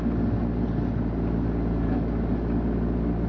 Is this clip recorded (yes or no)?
yes